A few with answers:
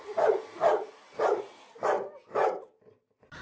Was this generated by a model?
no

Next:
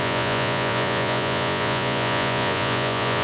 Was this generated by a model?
yes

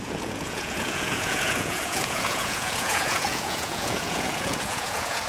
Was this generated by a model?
yes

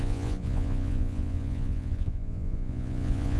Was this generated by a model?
yes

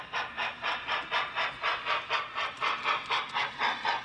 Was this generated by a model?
no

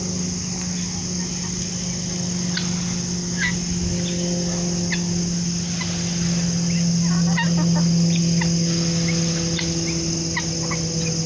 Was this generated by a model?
no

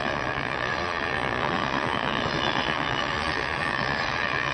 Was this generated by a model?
yes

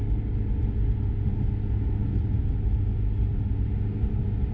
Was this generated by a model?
no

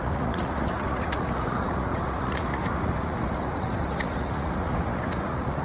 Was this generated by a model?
yes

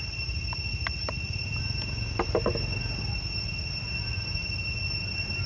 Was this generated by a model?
no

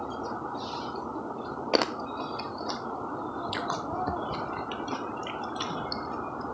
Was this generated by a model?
no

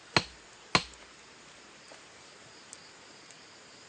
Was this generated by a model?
no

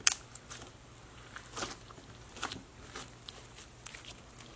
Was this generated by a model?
no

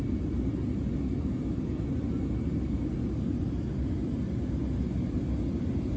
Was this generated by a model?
no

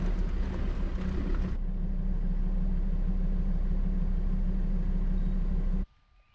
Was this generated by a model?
no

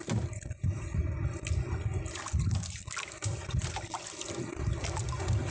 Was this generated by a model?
no